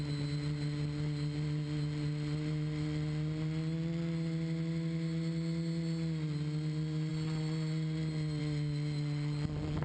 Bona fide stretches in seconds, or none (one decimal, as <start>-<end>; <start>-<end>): 0.0-9.8